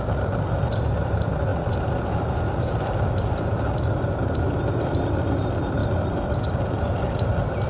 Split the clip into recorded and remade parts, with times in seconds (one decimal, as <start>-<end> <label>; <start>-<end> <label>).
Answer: 0.0-7.7 recorded